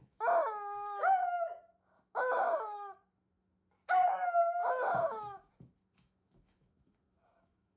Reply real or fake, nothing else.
fake